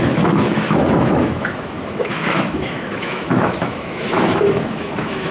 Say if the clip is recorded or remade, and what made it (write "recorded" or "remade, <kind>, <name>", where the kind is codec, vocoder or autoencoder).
remade, autoencoder, DAC-VAE